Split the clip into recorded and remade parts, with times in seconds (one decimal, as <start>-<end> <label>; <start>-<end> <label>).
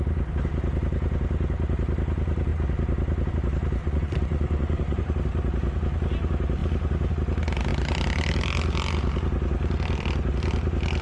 0.0-3.8 recorded; 3.8-5.0 remade; 5.0-11.0 recorded